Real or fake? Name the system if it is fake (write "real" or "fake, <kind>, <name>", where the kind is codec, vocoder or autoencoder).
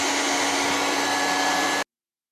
real